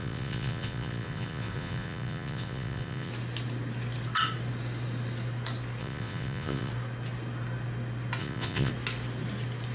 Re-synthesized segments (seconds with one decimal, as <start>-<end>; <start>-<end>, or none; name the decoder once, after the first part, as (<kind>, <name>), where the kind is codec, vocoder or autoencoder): 0.0-3.1 (vocoder, Vocos); 5.8-6.7; 8.2-8.7